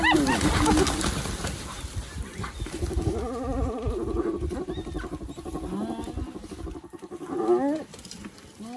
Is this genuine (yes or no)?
yes